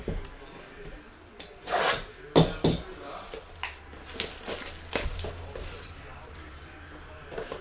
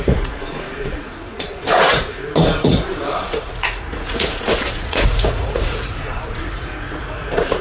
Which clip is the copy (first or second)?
second